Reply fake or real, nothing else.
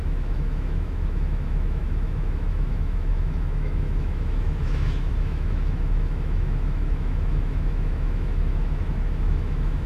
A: fake